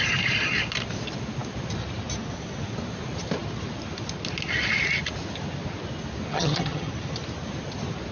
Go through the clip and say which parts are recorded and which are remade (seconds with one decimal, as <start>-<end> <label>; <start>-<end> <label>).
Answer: 0.0-6.3 recorded; 6.3-6.9 remade; 6.9-8.1 recorded